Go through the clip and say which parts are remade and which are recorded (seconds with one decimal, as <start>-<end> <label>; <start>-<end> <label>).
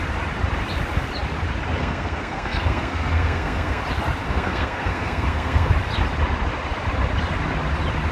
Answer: 0.0-1.8 recorded; 1.8-3.8 remade; 3.8-4.2 recorded; 4.2-5.7 remade; 5.7-8.1 recorded